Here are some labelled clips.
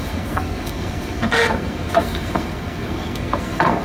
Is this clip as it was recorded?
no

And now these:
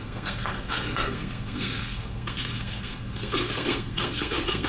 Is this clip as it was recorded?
no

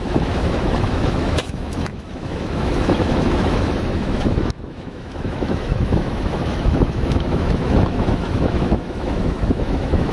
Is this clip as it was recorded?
no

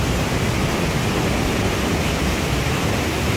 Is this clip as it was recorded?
yes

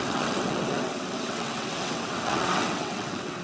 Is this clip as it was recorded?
no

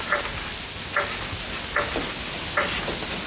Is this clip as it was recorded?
yes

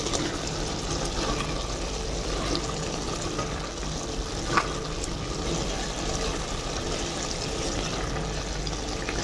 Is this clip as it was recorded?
yes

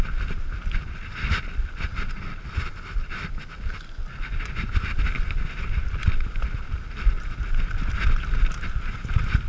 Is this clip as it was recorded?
yes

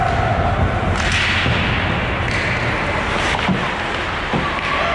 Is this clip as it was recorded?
yes